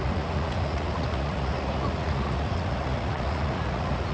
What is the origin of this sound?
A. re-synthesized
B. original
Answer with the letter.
A